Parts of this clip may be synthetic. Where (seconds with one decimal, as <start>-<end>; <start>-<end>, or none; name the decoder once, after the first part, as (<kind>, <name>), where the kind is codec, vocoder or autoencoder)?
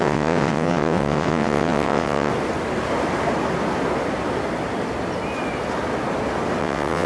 0.0-2.3 (vocoder, WaveNeXt); 6.6-7.1